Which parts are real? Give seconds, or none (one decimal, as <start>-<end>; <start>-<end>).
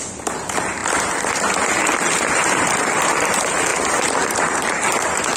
0.8-2.5; 3.7-4.3